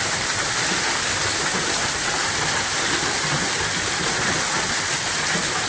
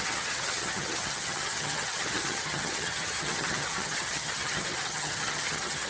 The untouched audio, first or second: first